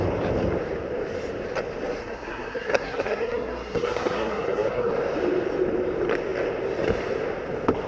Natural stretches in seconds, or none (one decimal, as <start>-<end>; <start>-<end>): 0.0-2.0; 4.9-7.9